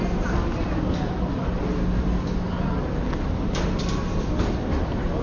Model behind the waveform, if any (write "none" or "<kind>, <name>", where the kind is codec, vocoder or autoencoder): none